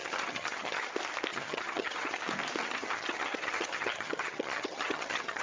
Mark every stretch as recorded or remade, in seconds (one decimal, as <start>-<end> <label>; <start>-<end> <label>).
0.0-0.9 remade; 0.9-1.3 recorded; 1.3-2.2 remade; 2.2-2.6 recorded; 2.6-5.4 remade